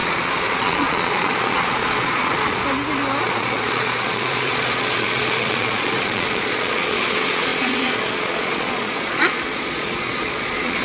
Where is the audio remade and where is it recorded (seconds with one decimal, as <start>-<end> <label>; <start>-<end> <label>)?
0.0-2.6 remade; 2.6-3.2 recorded; 3.2-10.8 remade